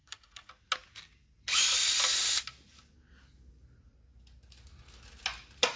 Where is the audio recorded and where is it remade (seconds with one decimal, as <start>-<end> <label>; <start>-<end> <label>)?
0.0-0.5 remade; 0.5-5.8 recorded